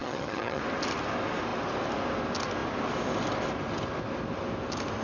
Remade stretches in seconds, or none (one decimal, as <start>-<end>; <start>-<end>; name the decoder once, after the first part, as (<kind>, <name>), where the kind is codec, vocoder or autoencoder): 0.0-0.6 (vocoder, HiFi-GAN)